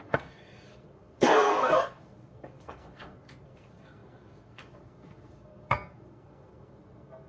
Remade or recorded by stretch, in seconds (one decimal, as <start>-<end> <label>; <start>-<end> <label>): 0.0-7.3 remade